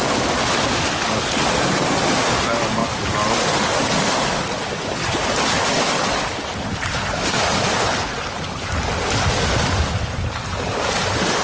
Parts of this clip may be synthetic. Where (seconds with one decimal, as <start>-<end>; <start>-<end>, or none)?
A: none